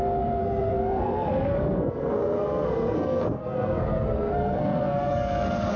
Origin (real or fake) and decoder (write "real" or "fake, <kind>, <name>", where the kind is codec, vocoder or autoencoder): fake, codec, SNAC